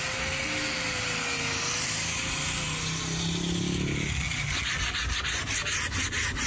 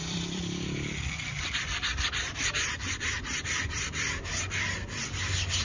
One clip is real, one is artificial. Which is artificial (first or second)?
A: second